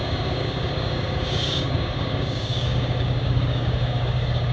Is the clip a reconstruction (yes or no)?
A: yes